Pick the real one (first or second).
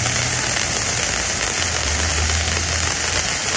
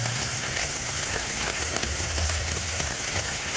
first